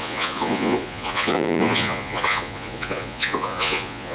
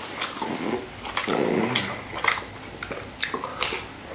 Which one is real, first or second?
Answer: second